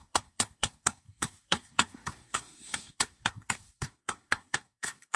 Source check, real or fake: fake